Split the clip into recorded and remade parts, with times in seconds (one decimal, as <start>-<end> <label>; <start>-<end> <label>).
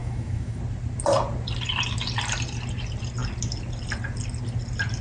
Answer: 0.0-0.6 remade; 0.6-5.0 recorded